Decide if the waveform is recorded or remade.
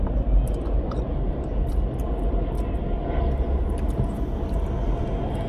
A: recorded